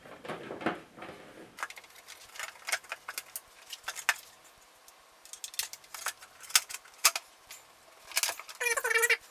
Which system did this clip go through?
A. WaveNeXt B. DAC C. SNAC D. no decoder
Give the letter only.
D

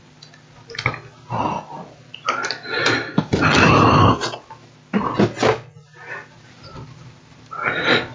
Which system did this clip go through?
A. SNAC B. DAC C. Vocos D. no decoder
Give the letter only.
D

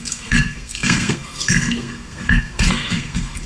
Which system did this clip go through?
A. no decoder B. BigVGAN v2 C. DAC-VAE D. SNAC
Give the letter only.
D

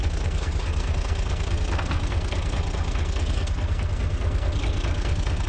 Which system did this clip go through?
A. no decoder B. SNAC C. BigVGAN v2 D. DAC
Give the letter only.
B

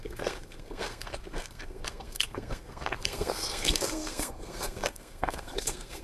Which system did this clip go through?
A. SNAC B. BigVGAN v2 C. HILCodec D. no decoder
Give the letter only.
A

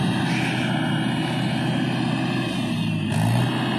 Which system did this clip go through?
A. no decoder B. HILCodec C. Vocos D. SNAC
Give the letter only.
A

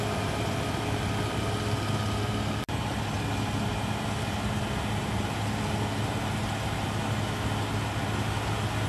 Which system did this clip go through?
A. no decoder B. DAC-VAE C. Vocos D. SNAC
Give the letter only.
A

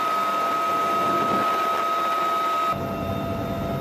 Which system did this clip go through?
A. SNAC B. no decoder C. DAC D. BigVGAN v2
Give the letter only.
B